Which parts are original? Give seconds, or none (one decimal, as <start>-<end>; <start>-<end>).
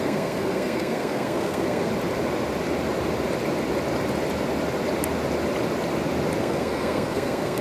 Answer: 1.9-6.4